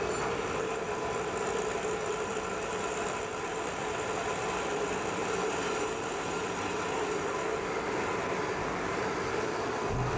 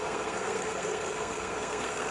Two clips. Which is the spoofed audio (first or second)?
second